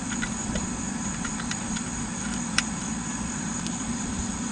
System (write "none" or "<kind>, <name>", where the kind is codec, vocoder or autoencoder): vocoder, BigVGAN v2